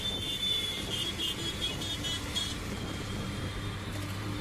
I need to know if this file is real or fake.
fake